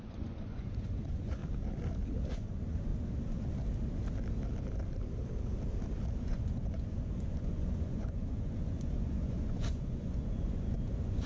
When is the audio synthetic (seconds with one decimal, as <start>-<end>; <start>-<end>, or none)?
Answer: 0.0-1.4; 2.3-2.9; 6.2-11.3